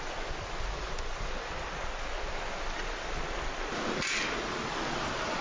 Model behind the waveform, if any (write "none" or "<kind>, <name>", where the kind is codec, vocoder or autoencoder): none